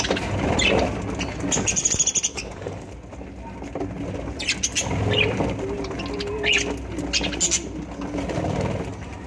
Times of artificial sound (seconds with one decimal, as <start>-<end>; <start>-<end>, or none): 2.3-2.9